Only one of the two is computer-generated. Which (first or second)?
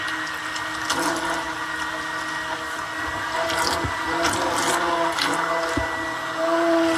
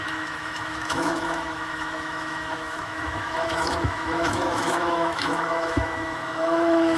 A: second